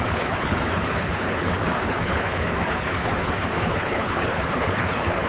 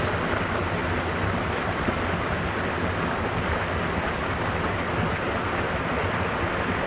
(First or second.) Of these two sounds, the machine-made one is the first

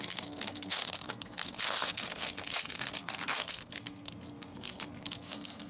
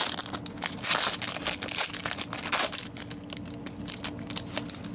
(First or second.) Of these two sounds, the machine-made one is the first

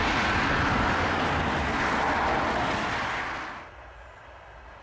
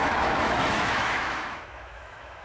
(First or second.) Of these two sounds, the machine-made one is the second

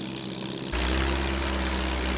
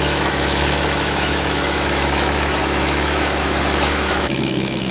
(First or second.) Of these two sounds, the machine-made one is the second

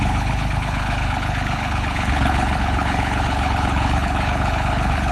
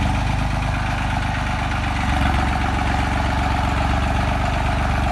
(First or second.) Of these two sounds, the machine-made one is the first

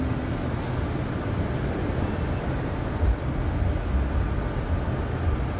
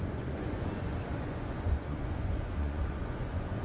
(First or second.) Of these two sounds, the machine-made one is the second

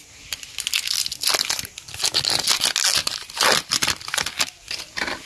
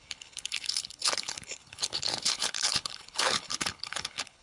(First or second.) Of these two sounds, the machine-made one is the second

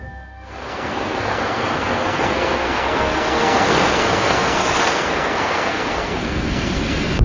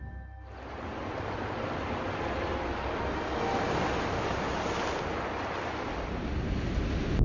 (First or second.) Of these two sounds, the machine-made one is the first